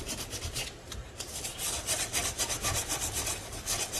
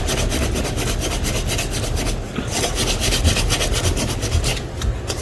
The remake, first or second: first